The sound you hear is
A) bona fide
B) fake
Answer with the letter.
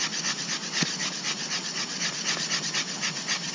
A